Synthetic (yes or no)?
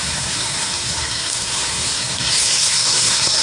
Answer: yes